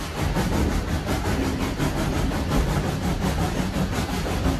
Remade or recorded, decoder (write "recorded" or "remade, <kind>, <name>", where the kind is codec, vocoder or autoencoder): recorded